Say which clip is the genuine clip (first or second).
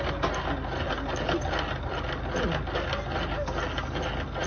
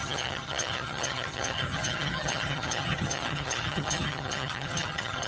first